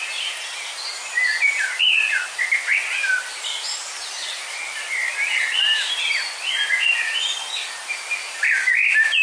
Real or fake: real